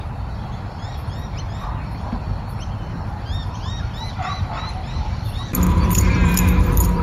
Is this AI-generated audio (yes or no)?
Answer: yes